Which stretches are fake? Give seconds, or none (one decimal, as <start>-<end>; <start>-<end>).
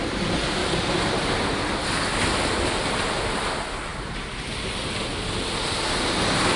0.6-1.1; 3.9-4.6